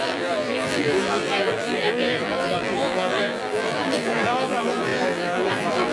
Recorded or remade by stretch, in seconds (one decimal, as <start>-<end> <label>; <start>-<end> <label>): 0.0-5.9 remade